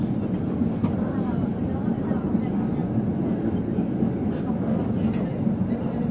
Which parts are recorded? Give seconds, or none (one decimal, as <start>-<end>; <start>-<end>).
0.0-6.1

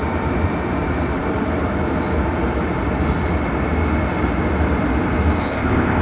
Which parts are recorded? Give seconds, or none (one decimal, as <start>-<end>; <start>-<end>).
0.0-5.4

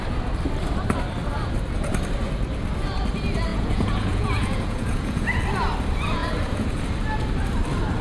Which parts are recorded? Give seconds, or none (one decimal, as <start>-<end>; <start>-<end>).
0.0-3.5; 5.4-6.2; 6.8-8.0

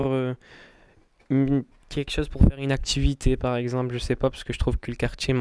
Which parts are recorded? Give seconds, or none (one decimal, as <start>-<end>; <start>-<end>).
0.0-5.4

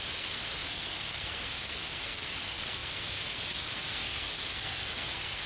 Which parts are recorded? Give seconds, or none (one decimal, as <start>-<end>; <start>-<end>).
none